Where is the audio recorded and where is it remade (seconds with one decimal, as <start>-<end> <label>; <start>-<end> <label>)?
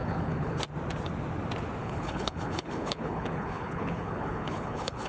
0.0-0.6 remade; 0.6-1.8 recorded; 1.8-5.1 remade